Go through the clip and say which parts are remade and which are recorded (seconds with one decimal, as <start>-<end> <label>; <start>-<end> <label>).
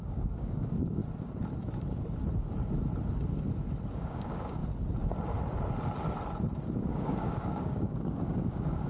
0.0-1.0 remade; 1.0-3.9 recorded; 3.9-4.6 remade; 4.6-6.7 recorded; 6.7-8.9 remade